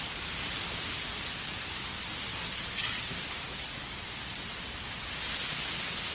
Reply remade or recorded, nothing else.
recorded